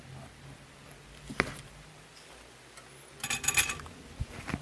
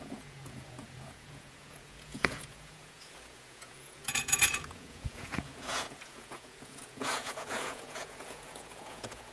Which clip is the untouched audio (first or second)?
first